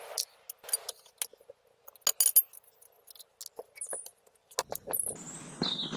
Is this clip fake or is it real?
real